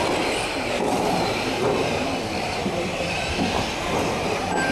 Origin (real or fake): real